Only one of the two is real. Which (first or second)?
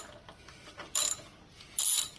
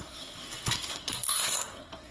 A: first